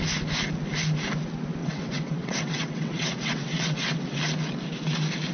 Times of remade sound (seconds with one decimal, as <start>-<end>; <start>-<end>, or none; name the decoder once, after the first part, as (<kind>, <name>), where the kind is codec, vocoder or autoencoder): 1.6-4.2 (vocoder, WaveNeXt)